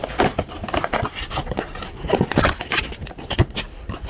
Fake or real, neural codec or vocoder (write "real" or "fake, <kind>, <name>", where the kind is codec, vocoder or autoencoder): fake, vocoder, BigVGAN v2